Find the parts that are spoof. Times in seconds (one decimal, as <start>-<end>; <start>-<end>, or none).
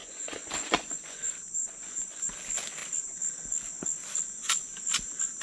0.0-1.2; 1.6-2.2